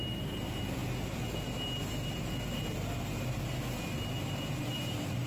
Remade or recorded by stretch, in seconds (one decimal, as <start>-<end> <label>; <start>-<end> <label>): 0.0-5.3 recorded